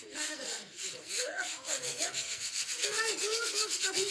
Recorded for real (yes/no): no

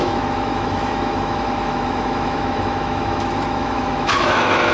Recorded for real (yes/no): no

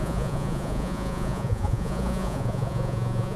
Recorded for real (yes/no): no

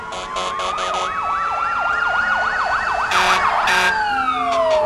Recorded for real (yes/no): yes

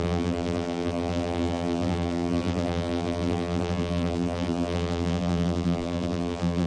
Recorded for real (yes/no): no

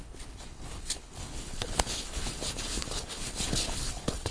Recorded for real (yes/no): no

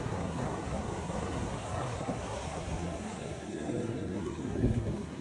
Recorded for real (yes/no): no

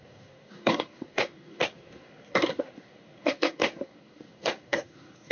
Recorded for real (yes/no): no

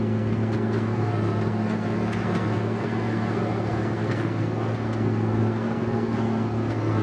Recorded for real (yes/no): no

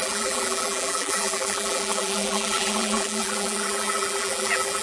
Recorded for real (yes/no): no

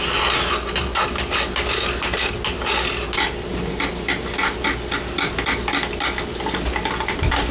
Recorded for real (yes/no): yes